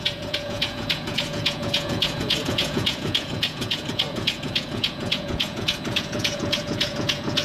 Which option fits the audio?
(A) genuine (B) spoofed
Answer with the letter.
B